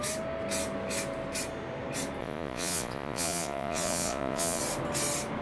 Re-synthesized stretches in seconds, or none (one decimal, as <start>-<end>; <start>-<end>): 2.2-4.6